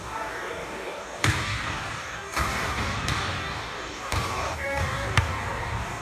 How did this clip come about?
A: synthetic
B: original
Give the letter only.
A